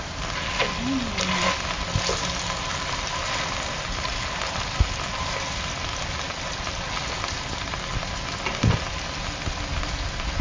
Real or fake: real